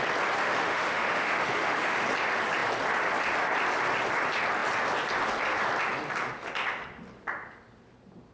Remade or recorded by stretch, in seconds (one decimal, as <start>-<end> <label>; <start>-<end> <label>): 0.0-0.4 recorded; 0.4-2.0 remade; 2.0-8.3 recorded